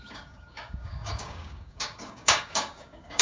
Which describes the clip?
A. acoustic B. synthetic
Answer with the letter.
B